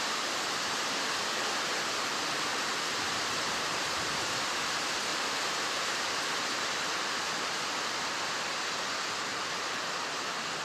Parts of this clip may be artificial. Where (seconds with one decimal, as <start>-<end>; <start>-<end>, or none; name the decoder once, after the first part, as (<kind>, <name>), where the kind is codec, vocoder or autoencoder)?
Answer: 2.5-4.3 (vocoder, BigVGAN v2); 5.1-6.1; 9.3-10.6